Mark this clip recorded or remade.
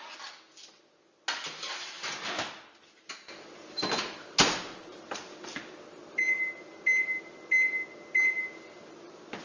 recorded